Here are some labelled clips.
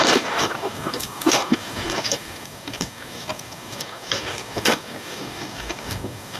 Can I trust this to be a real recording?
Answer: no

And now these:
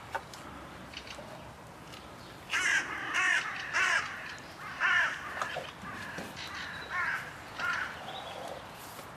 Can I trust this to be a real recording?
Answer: yes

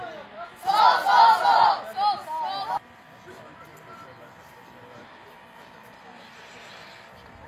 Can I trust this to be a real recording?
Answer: yes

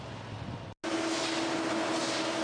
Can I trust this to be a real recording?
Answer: yes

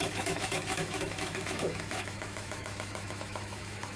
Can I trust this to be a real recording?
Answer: no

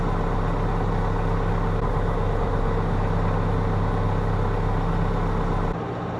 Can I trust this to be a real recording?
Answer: yes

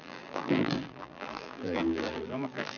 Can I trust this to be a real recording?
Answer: no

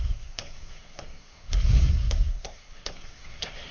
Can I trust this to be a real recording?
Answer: no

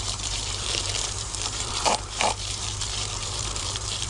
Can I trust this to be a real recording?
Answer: no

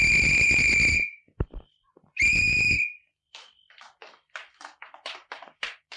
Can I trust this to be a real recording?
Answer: no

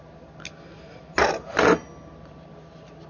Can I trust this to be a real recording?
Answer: yes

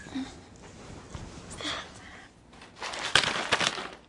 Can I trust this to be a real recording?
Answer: yes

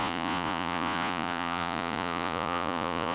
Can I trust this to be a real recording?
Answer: no